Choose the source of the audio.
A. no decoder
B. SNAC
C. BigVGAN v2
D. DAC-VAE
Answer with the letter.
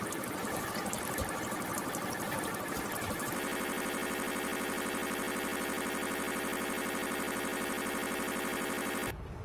C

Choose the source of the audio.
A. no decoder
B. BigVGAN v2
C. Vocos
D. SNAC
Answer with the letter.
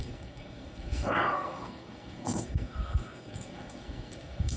D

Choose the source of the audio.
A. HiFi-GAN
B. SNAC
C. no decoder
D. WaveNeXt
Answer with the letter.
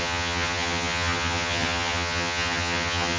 A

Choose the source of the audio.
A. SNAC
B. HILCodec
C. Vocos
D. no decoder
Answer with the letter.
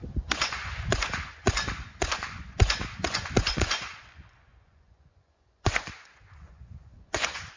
C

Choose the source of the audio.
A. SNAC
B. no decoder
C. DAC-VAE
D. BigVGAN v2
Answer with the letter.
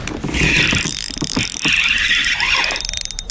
D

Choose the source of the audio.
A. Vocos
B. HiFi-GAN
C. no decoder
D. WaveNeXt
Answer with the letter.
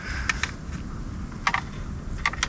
C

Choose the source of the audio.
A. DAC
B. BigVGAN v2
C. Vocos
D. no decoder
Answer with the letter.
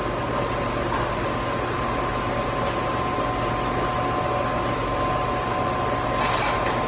D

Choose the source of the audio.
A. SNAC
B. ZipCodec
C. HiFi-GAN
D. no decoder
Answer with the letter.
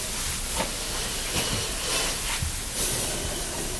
D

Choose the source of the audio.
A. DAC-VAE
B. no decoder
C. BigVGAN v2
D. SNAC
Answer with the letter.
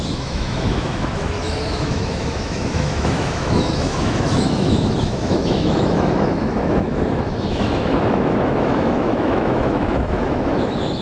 A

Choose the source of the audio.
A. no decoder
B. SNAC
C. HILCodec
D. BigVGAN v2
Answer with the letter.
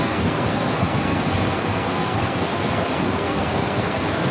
B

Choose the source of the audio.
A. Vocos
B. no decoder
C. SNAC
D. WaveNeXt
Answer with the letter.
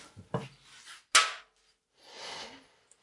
B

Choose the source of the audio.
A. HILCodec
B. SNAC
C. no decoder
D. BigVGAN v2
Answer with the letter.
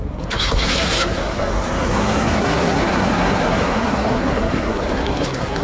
B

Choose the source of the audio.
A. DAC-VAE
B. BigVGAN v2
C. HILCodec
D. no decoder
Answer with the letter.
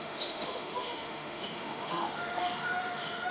A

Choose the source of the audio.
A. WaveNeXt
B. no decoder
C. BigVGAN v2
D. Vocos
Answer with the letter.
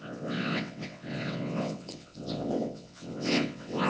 A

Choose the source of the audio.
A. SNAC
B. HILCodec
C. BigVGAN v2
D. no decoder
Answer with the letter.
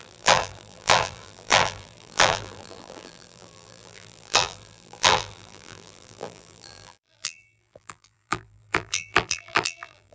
C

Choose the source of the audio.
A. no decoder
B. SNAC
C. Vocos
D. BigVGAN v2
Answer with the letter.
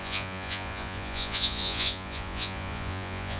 C